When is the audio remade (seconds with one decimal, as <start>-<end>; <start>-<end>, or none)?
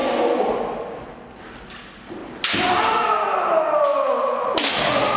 none